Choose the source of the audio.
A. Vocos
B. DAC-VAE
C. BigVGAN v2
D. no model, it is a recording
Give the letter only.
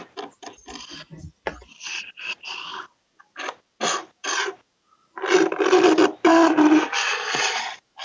C